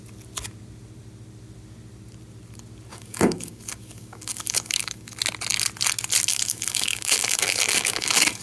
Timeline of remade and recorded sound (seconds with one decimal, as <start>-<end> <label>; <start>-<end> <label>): 0.0-2.9 recorded; 2.9-5.2 remade; 5.2-6.3 recorded; 6.3-8.4 remade